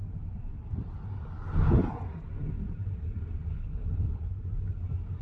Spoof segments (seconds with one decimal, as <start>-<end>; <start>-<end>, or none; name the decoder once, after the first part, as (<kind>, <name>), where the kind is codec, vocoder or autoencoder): 3.5-4.4 (codec, HILCodec)